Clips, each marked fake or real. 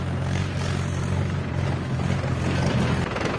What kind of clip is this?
real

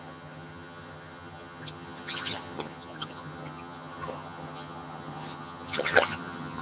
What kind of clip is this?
fake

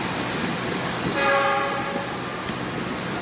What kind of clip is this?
real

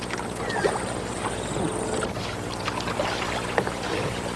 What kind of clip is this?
real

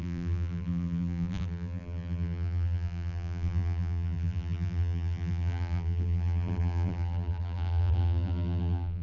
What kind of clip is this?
fake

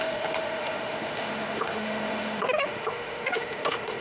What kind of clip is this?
fake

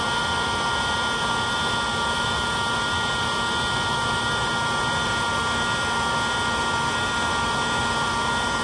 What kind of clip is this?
real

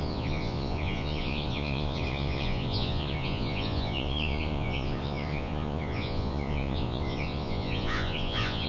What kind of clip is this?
fake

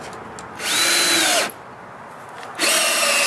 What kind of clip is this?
real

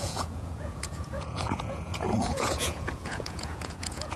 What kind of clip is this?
fake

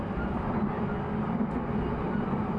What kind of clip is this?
real